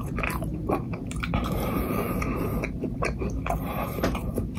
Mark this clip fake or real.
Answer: fake